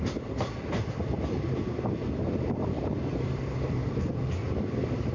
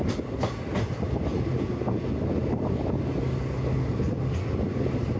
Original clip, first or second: second